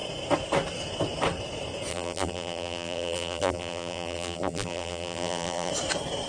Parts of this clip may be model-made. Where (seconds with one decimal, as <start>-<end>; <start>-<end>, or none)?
1.9-5.7